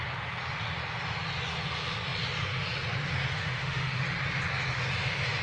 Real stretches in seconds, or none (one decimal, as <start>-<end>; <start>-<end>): 0.0-3.3; 4.0-5.4